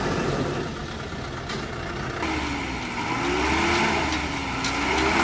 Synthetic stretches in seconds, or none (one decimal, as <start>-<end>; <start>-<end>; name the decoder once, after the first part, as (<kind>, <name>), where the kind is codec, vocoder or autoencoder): none